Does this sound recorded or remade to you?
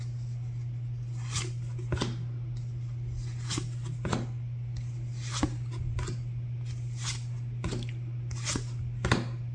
recorded